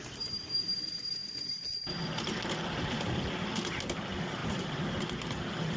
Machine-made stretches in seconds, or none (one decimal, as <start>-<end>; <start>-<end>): none